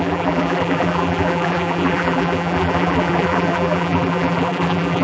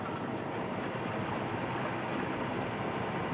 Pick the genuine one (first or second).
second